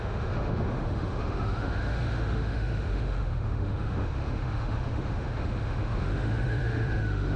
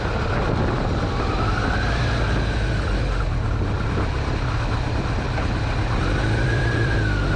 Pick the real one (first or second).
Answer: second